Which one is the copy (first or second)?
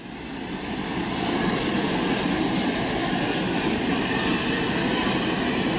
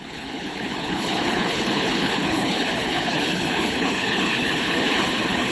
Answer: second